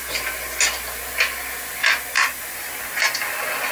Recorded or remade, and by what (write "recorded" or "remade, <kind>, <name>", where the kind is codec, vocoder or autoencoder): recorded